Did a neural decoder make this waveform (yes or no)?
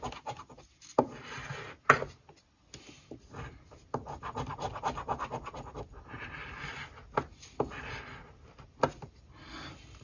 no